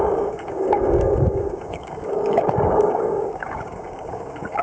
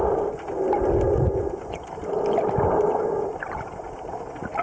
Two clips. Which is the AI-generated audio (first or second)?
first